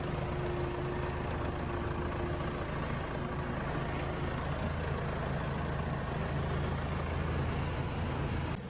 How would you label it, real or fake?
real